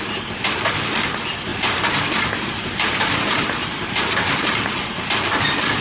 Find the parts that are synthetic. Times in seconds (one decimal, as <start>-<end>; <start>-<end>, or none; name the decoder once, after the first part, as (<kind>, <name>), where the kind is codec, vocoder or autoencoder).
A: 1.5-5.0 (vocoder, BigVGAN v2)